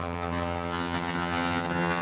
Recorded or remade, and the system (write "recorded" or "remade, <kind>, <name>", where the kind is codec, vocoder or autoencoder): remade, vocoder, HiFi-GAN